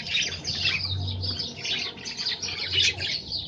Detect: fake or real real